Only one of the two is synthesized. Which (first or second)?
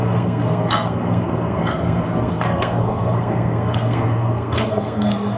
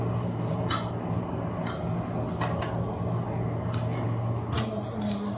first